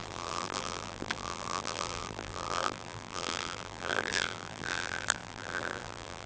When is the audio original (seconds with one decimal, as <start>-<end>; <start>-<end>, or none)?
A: none